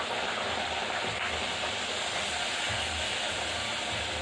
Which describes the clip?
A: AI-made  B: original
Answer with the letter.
B